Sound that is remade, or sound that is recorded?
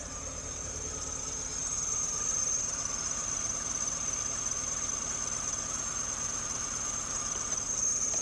recorded